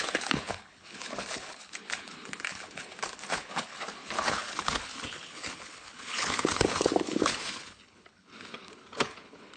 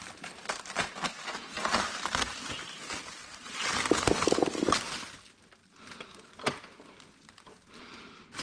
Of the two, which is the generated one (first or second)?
first